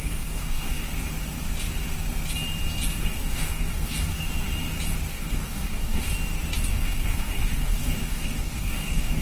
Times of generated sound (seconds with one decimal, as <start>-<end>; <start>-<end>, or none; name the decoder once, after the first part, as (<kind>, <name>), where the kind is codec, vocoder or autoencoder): 0.0-0.9 (codec, DAC); 3.0-4.3; 5.1-6.1; 6.7-9.2